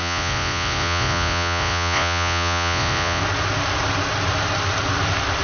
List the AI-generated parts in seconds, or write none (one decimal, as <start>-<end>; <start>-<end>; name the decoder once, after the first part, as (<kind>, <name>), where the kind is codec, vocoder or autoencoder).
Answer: 0.0-3.2 (vocoder, Vocos)